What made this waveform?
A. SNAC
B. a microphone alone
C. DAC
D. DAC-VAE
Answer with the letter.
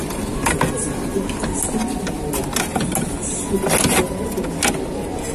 B